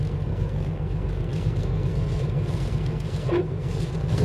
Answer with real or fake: fake